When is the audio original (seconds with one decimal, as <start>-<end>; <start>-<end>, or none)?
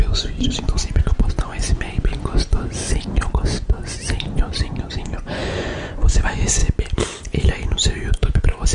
6.6-7.1